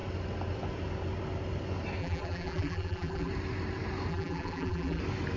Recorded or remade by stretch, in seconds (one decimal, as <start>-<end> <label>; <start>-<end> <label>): 0.0-2.0 recorded; 2.0-3.3 remade; 3.3-4.1 recorded; 4.1-5.0 remade; 5.0-5.4 recorded